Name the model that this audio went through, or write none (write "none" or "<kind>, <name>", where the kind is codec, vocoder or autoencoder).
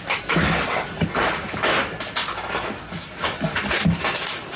none